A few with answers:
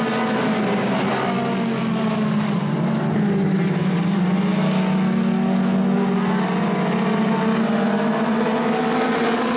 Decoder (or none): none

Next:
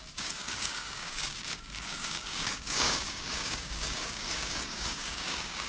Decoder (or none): codec, DAC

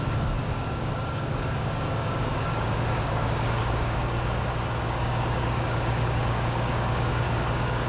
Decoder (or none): codec, DAC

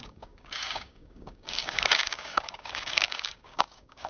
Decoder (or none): codec, DAC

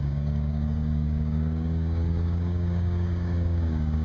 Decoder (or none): codec, DAC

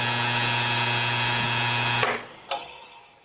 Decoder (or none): none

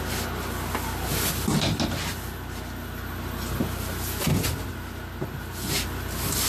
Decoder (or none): none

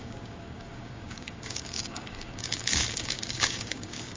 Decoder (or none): codec, DAC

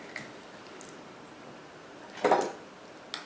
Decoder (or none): none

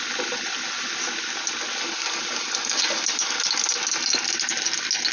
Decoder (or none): none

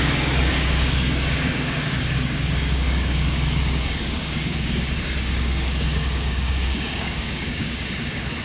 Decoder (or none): codec, DAC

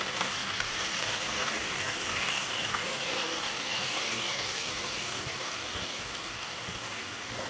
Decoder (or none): codec, DAC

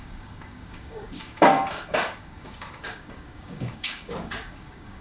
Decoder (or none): codec, DAC